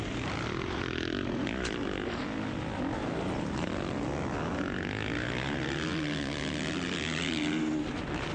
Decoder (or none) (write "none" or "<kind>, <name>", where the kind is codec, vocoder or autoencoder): none